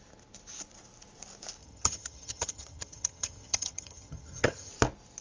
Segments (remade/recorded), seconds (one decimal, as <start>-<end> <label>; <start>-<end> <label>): 0.0-1.6 recorded; 1.6-4.7 remade; 4.7-5.2 recorded